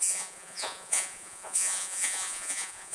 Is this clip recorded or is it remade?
remade